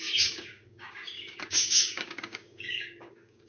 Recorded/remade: remade